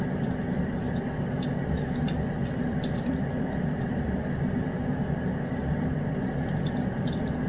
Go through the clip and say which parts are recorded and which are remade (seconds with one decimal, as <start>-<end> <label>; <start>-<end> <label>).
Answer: 0.0-2.4 recorded; 2.4-4.4 remade; 4.4-5.6 recorded; 5.6-7.5 remade